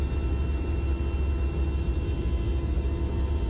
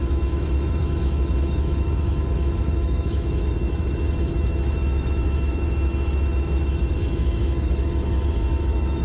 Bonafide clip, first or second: first